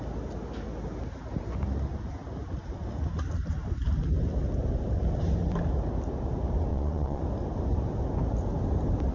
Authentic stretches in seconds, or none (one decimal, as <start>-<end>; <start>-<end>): 0.0-6.7; 7.2-9.1

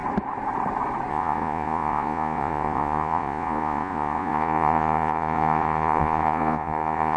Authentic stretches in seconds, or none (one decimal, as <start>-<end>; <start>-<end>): 0.0-1.1

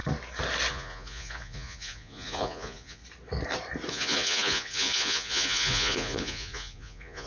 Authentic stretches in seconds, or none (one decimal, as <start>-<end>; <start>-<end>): 0.0-0.7; 3.0-3.9

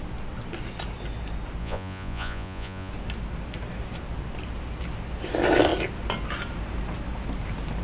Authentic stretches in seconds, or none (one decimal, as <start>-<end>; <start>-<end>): 0.0-1.6; 2.9-7.8

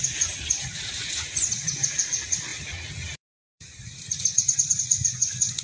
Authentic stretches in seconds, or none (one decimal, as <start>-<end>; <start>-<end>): none

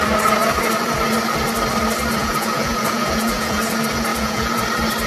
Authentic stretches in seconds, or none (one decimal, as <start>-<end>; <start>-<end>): 0.0-2.2; 3.6-4.1; 4.6-5.1

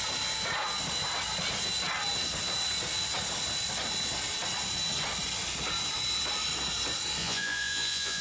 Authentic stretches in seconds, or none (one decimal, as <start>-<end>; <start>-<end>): 0.0-7.2